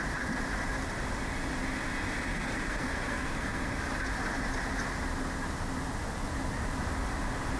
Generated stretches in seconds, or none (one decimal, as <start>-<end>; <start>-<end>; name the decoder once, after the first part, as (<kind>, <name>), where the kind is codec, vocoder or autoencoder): 2.3-3.8 (codec, SNAC)